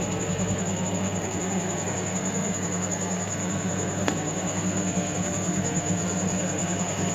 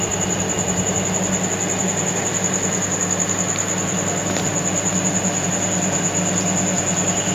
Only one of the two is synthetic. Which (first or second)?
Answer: first